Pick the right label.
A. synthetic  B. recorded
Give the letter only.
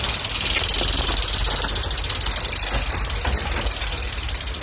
B